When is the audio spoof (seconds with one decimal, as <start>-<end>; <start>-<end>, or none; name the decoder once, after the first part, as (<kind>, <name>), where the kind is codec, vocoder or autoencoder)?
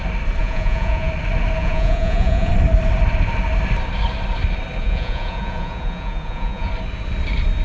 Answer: 0.4-1.1 (vocoder, Vocos); 1.6-2.5; 4.8-6.7